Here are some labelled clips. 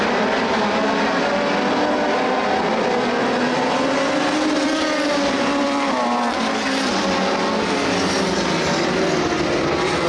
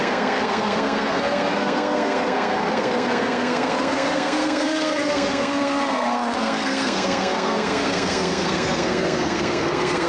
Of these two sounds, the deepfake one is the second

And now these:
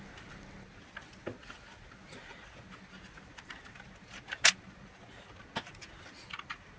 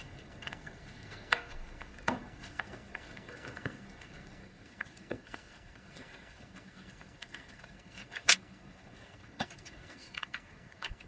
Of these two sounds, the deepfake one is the second